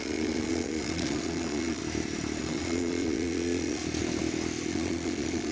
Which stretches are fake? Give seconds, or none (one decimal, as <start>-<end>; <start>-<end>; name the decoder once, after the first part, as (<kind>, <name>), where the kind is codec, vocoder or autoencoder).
0.0-1.8 (vocoder, Vocos); 2.4-3.8; 4.7-5.5